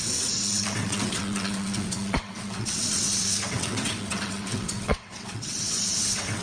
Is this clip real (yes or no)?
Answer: no